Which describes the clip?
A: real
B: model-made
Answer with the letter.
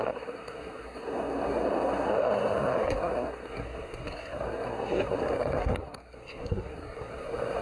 B